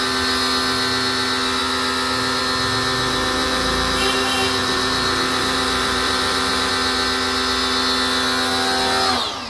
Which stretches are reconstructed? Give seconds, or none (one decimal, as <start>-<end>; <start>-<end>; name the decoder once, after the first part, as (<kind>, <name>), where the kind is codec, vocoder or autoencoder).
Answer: 3.4-6.7 (vocoder, BigVGAN v2)